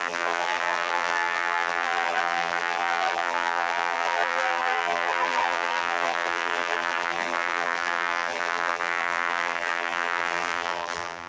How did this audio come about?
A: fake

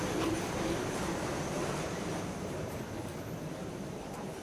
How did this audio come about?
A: fake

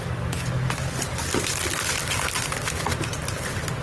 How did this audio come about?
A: real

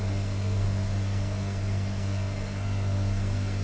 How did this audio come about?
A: fake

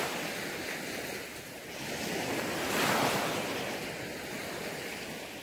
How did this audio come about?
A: real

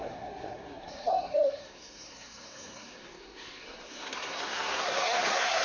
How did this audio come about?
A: fake